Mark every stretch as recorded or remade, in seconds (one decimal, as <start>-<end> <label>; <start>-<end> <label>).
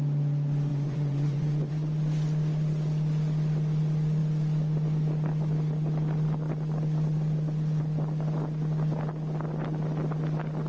0.0-0.7 recorded; 0.7-1.7 remade; 1.7-10.7 recorded